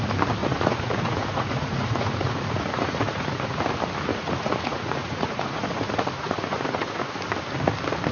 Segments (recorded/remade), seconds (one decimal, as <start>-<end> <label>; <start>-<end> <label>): 0.0-0.4 recorded; 0.4-3.6 remade; 3.6-4.1 recorded; 4.1-7.1 remade; 7.1-8.1 recorded